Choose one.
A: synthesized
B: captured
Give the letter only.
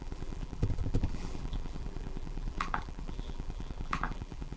A